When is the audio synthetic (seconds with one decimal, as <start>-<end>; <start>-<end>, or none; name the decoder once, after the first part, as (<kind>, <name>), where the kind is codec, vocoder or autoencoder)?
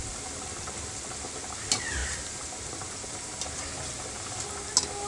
2.0-3.4 (vocoder, BigVGAN v2)